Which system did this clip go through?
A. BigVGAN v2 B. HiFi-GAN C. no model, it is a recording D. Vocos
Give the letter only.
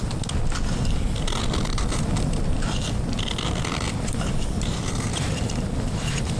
C